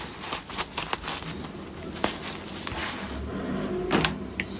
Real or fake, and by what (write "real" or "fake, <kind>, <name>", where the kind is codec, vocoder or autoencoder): real